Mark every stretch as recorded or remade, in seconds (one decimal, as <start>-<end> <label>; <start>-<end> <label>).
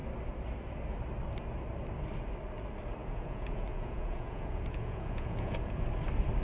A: 0.0-3.0 recorded; 3.0-5.8 remade; 5.8-6.4 recorded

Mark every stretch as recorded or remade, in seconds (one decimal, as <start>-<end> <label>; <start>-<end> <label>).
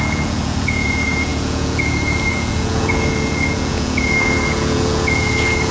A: 0.0-5.7 remade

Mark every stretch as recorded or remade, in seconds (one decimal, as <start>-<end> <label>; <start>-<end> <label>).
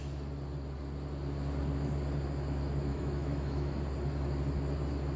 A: 0.0-2.9 recorded; 2.9-3.8 remade; 3.8-5.2 recorded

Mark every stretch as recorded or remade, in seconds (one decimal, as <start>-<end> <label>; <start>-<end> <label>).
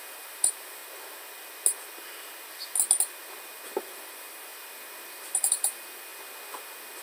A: 0.0-0.8 remade; 0.8-3.8 recorded; 3.8-4.5 remade; 4.5-5.1 recorded; 5.1-6.1 remade; 6.1-7.0 recorded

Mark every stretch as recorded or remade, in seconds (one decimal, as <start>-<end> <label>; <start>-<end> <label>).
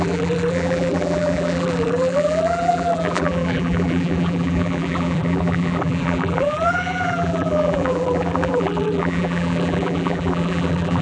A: 0.0-11.0 remade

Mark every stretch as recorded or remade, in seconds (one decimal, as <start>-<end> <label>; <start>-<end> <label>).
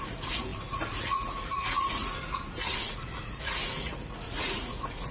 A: 0.0-5.1 remade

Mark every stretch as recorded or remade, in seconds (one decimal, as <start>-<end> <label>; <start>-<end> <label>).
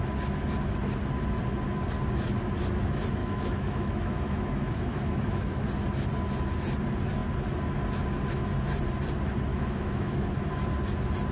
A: 0.0-3.2 recorded; 3.2-5.7 remade; 5.7-9.5 recorded; 9.5-10.2 remade; 10.2-11.3 recorded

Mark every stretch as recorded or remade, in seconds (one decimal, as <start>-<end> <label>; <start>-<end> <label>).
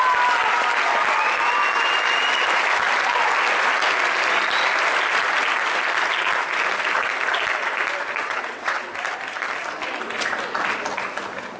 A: 0.0-8.2 recorded; 8.2-8.9 remade; 8.9-11.6 recorded